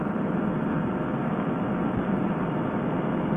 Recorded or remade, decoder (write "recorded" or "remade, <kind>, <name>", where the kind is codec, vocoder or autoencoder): recorded